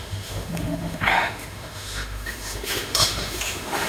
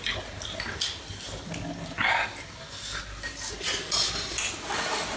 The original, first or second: second